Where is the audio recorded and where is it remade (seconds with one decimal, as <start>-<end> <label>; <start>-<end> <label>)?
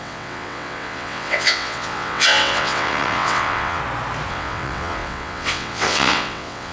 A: 0.0-3.8 remade; 3.8-4.3 recorded; 4.3-6.7 remade